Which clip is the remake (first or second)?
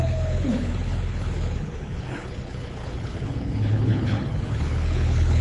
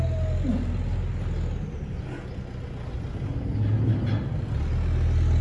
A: first